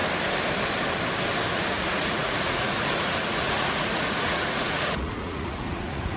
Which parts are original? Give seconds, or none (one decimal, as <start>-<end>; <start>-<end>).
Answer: 0.0-1.7